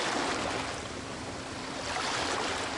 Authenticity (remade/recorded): recorded